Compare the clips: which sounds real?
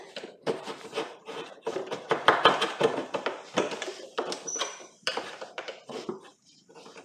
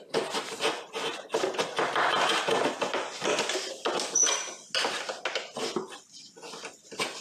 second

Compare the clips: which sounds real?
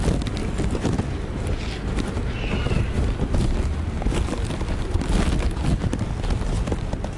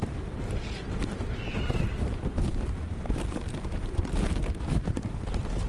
first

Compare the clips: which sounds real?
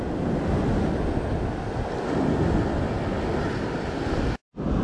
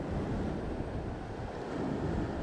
first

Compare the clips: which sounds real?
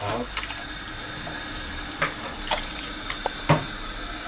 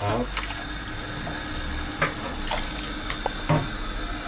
second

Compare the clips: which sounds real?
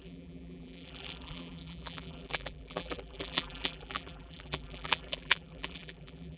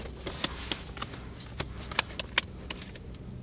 second